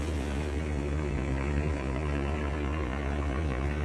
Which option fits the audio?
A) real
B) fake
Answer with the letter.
B